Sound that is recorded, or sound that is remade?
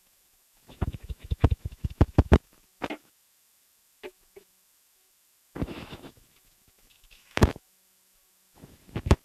remade